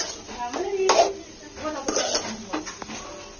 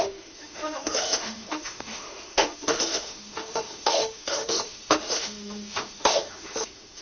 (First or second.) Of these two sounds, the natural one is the first